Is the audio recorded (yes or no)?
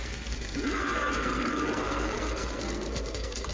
no